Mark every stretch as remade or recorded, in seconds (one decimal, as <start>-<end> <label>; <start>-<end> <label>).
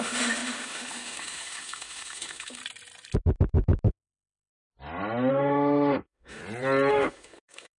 0.0-2.6 remade; 2.6-3.9 recorded; 3.9-4.5 remade; 4.5-5.3 recorded; 5.3-6.4 remade; 6.4-6.9 recorded; 6.9-7.8 remade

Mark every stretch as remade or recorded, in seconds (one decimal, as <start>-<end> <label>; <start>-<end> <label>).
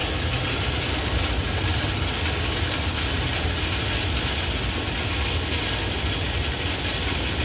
0.0-7.4 recorded